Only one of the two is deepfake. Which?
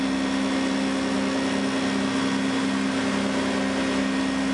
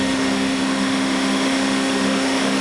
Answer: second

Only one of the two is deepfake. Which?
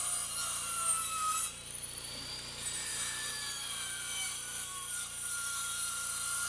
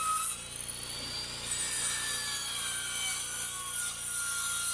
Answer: first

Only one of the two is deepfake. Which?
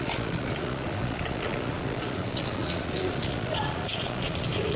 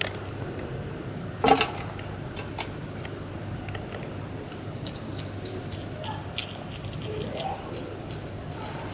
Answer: first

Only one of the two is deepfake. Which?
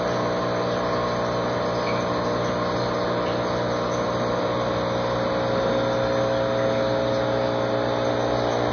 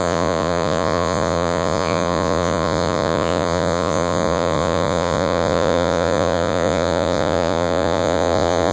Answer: second